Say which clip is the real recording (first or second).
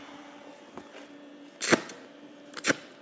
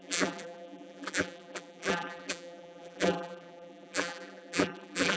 first